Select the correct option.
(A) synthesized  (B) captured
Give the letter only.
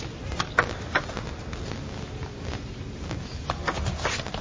B